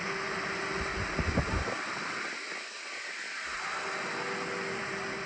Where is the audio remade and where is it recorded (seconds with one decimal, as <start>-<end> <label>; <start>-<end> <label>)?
0.0-5.3 recorded